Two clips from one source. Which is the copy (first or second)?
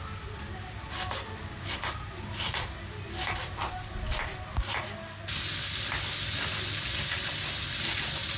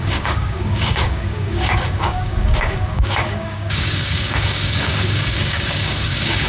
second